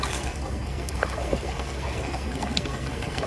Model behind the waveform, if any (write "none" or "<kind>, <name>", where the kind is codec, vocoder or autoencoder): codec, SNAC